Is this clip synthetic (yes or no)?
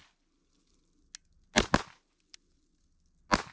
no